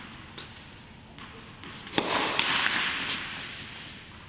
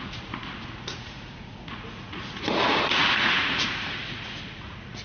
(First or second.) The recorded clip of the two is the first